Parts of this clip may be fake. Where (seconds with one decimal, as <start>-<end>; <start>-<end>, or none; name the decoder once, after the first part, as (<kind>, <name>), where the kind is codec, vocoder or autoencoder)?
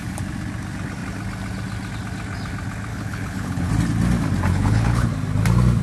2.9-3.7 (codec, HILCodec); 4.5-5.1